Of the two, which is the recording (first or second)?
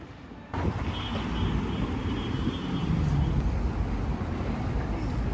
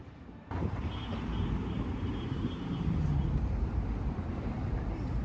first